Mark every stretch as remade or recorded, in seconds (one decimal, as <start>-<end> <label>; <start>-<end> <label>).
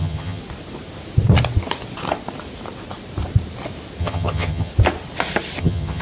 0.0-0.4 remade; 0.4-4.0 recorded; 4.0-4.7 remade; 4.7-5.6 recorded; 5.6-6.0 remade